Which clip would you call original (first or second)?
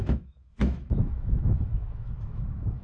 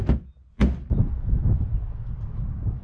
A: second